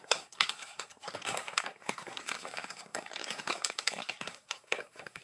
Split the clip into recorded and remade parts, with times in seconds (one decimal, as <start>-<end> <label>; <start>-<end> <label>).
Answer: 0.0-5.2 remade